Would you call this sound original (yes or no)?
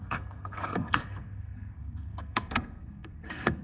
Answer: no